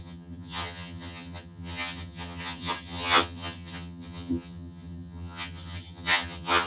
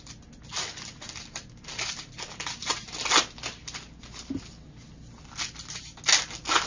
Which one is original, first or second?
second